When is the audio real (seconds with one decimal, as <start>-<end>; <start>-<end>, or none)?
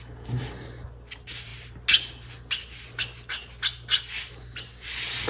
0.0-5.3